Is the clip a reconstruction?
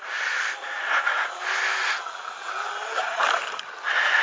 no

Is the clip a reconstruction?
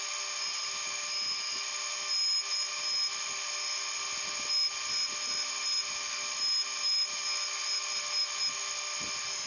no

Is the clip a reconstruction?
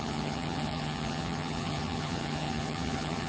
yes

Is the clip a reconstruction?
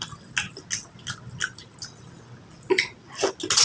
no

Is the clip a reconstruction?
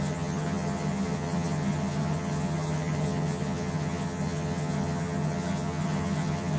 yes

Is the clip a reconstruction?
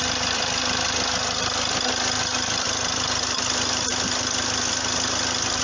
no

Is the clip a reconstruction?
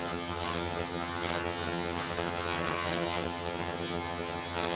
yes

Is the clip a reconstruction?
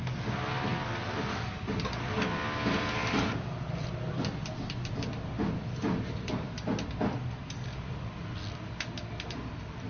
no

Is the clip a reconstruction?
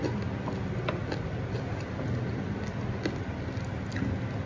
no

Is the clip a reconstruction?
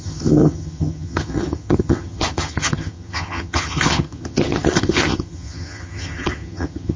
yes